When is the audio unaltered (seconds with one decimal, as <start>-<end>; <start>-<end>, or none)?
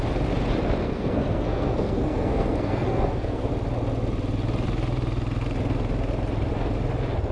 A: 0.0-0.8; 3.5-7.3